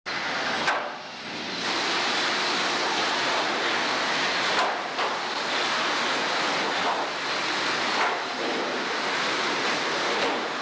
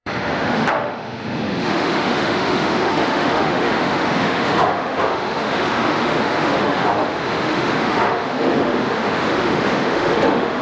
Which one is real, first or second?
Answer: first